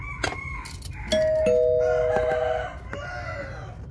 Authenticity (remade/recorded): recorded